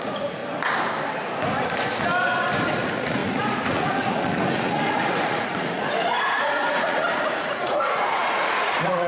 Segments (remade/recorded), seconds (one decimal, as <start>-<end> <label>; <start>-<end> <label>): 0.0-0.4 remade; 0.4-2.7 recorded; 2.7-9.1 remade